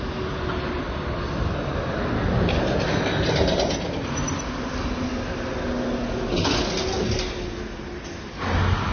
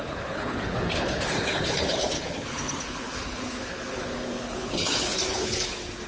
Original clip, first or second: first